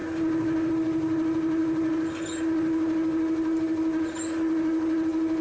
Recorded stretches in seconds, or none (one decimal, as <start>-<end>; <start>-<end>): 0.0-5.4